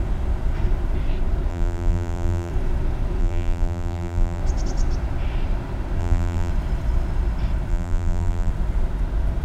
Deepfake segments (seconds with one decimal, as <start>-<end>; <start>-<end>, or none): 1.5-2.5; 3.2-4.4; 6.0-6.5; 7.7-8.5